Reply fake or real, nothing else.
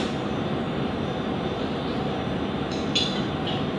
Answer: fake